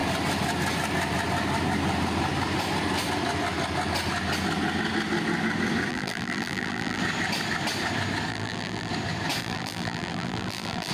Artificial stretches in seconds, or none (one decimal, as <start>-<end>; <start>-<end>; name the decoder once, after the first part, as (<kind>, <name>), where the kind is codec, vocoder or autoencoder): 5.9-7.0 (vocoder, BigVGAN v2); 8.3-8.9; 9.4-10.9